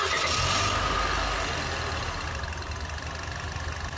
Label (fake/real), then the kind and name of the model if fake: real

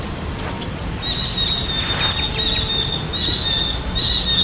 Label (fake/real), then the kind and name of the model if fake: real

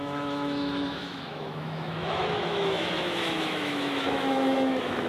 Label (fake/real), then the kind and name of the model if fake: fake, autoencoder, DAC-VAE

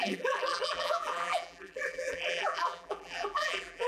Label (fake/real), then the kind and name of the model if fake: fake, vocoder, BigVGAN v2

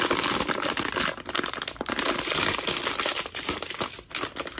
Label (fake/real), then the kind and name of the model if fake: real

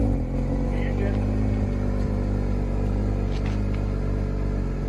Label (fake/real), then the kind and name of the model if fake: real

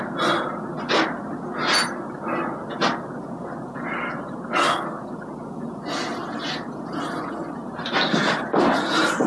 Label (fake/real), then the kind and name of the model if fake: real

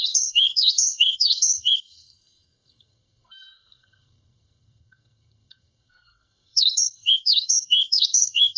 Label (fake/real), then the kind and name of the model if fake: fake, codec, SNAC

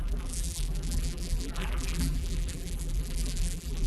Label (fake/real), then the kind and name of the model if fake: fake, vocoder, BigVGAN v2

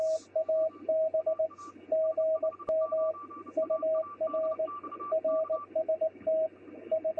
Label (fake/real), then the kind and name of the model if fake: real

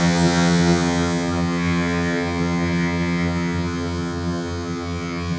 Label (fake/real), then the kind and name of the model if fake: fake, vocoder, HiFi-GAN